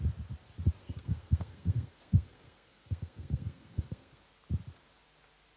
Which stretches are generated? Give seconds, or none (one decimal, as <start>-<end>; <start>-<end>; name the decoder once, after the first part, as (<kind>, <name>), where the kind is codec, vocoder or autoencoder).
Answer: 0.8-4.2 (codec, SNAC)